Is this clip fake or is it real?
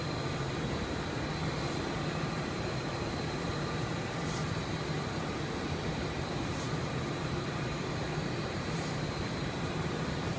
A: fake